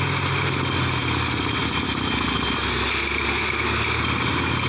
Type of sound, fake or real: real